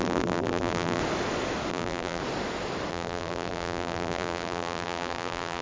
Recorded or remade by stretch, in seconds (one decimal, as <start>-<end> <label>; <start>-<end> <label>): 0.0-1.0 remade; 1.0-1.7 recorded; 1.7-2.2 remade; 2.2-2.9 recorded; 2.9-5.6 remade